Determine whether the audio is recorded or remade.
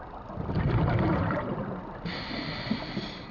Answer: remade